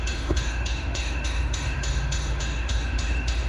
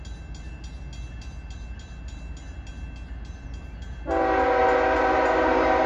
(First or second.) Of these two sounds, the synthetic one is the first